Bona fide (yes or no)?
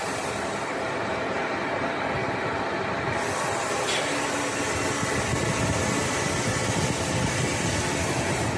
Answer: yes